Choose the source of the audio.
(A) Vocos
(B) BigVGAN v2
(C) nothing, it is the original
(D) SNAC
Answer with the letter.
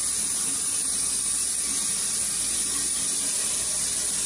C